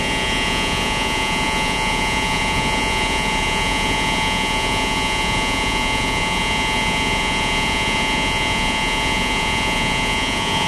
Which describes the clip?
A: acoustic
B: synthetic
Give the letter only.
B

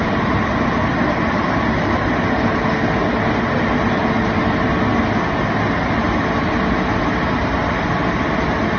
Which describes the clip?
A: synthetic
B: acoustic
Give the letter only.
B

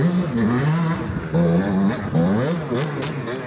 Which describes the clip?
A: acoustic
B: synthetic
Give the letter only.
A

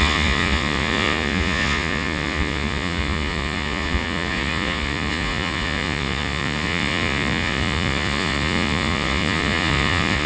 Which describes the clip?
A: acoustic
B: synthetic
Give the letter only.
B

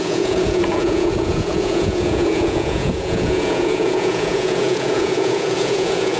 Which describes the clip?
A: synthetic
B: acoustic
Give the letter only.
A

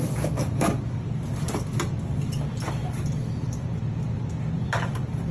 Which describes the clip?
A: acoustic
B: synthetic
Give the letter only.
A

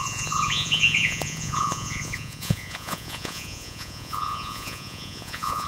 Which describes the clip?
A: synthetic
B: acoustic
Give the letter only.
A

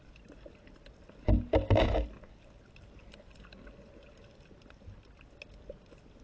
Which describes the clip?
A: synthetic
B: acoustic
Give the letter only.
B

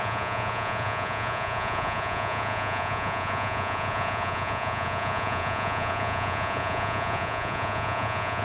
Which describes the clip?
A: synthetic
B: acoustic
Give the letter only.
A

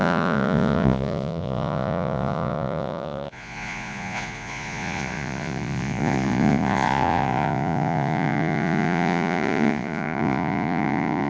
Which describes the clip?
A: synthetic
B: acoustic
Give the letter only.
A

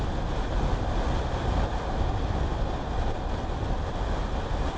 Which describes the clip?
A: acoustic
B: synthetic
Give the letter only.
A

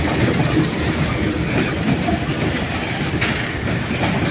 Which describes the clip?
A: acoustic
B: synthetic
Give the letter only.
A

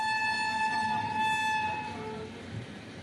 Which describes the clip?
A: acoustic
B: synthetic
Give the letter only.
A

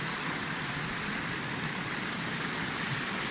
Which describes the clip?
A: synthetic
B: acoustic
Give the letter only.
B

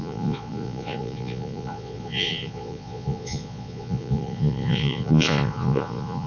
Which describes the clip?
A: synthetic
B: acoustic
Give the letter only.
A